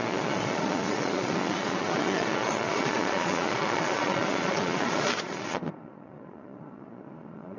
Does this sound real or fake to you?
fake